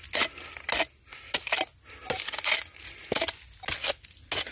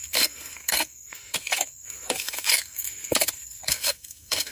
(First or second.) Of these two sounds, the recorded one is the first